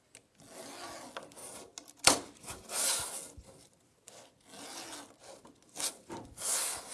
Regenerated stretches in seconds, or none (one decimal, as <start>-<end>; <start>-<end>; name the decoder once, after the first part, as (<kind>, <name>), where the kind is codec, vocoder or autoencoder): none